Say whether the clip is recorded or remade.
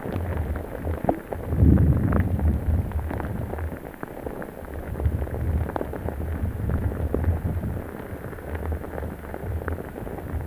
recorded